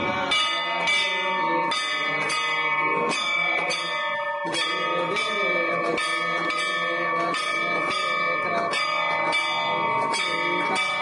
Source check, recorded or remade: recorded